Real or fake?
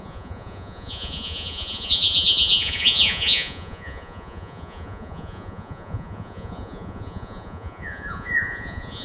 fake